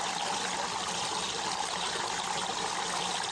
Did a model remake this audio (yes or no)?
no